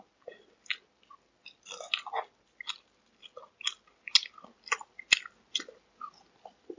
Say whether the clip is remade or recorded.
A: recorded